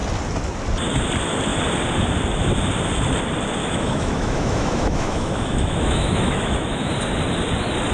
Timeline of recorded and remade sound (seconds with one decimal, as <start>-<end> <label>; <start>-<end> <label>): 0.0-3.6 recorded; 3.6-6.9 remade; 6.9-7.9 recorded